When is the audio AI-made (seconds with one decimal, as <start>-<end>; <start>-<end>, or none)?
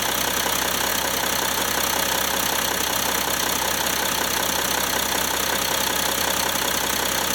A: none